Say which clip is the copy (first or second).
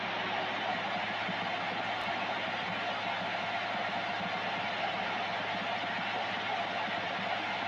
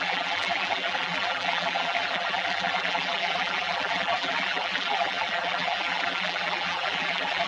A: second